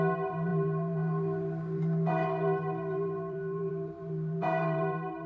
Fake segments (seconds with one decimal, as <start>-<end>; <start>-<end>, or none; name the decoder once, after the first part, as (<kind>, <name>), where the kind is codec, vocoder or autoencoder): 0.0-5.3 (vocoder, BigVGAN v2)